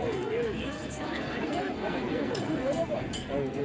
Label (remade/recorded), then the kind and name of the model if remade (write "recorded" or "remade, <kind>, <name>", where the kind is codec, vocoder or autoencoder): remade, codec, SNAC